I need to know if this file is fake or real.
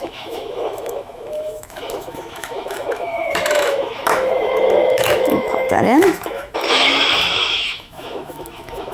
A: fake